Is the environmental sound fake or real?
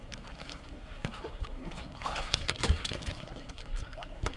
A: fake